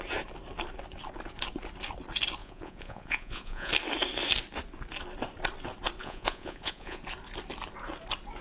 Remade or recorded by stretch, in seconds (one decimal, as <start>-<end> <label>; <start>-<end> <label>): 0.0-2.4 recorded; 2.4-3.7 remade; 3.7-6.0 recorded; 6.0-7.0 remade; 7.0-8.4 recorded